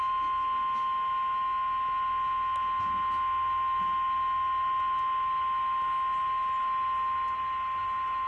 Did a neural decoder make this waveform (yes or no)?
no